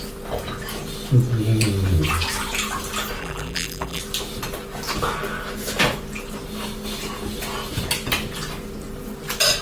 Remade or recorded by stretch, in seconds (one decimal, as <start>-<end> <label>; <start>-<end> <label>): 0.0-3.2 recorded; 3.2-4.0 remade; 4.0-9.6 recorded